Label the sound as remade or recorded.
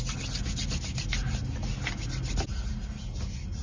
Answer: recorded